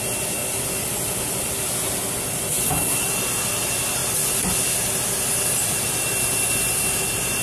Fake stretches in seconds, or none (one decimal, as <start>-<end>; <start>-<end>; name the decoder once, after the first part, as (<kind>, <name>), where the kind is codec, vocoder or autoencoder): none